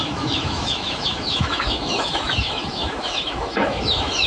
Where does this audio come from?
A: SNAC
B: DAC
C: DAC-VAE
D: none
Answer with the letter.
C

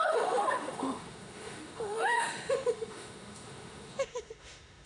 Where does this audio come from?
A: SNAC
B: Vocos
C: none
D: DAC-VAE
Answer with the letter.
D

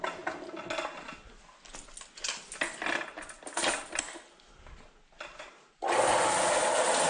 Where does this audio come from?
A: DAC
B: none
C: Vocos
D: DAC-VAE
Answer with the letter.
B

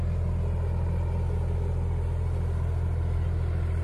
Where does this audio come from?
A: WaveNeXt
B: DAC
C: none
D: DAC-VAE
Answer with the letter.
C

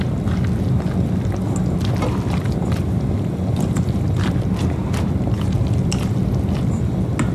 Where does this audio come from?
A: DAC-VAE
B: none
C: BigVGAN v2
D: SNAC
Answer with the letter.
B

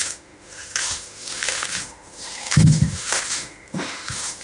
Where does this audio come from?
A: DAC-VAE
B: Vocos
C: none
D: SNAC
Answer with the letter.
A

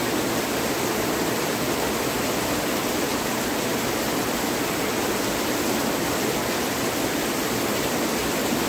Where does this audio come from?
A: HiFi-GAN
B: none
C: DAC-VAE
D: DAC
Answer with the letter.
B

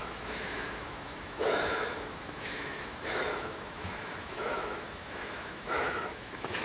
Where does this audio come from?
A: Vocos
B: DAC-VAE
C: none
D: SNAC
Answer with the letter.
B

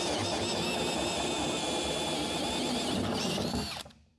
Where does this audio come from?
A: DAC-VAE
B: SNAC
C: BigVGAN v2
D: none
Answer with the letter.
D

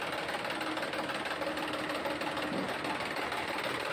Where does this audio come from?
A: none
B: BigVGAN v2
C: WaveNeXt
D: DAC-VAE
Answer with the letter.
A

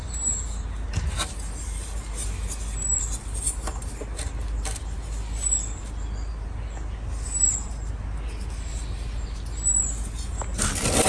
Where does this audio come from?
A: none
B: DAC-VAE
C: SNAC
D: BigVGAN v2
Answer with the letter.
A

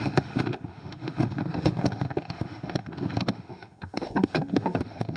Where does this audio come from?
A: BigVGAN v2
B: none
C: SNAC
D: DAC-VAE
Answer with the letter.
D